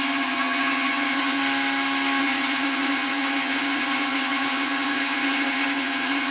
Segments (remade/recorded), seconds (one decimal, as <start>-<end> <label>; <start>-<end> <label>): 0.0-1.4 remade; 1.4-2.2 recorded; 2.2-6.3 remade